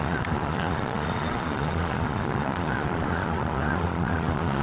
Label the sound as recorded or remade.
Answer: remade